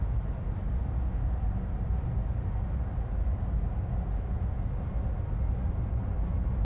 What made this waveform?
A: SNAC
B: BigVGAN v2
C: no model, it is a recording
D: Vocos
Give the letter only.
C